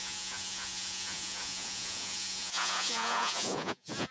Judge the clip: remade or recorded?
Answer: remade